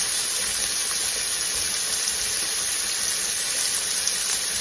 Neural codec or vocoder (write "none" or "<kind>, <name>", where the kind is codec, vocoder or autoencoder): none